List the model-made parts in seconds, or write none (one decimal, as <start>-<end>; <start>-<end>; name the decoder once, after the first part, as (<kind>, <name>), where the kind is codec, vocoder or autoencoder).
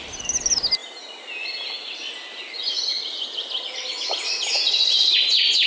none